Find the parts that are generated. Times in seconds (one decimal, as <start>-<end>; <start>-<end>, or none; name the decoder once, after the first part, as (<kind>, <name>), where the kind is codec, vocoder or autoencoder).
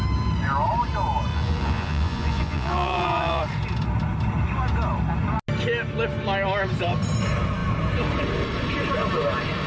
1.3-3.4 (vocoder, Vocos)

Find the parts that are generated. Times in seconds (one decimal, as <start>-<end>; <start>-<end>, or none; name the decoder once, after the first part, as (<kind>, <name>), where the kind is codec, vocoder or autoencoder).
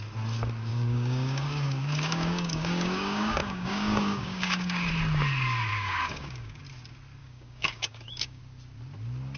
0.7-4.9 (codec, DAC); 5.7-6.6; 7.2-8.4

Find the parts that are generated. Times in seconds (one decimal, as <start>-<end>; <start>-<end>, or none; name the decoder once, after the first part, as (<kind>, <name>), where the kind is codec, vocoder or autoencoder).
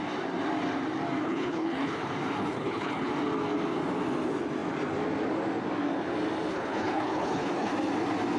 1.2-2.0 (codec, HILCodec); 2.4-3.1; 6.5-7.7